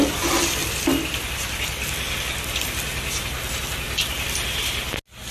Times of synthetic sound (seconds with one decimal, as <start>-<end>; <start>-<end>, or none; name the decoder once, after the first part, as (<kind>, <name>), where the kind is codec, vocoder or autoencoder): 0.6-3.6 (vocoder, BigVGAN v2)